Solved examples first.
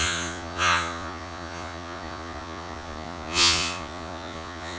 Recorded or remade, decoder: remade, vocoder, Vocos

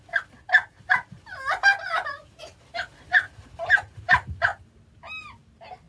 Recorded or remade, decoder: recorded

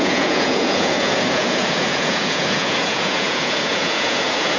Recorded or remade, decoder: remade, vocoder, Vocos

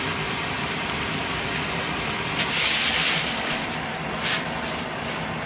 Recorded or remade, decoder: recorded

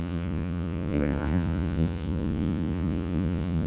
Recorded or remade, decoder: remade, vocoder, Vocos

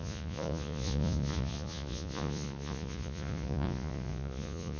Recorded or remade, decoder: remade, vocoder, Vocos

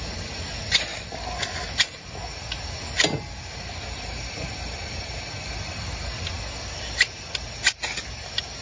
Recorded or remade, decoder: recorded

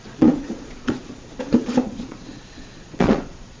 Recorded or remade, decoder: remade, vocoder, Vocos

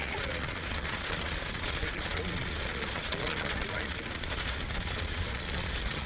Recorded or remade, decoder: remade, vocoder, Vocos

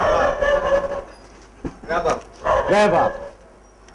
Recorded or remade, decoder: recorded